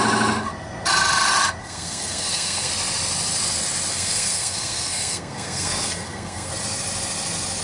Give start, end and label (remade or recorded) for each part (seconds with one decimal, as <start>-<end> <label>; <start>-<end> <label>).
0.0-1.6 recorded; 1.6-2.7 remade; 2.7-3.9 recorded; 3.9-6.5 remade; 6.5-7.6 recorded